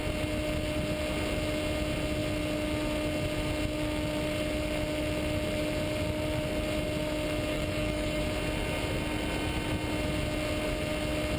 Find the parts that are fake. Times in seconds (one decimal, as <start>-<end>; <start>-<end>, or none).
7.5-8.2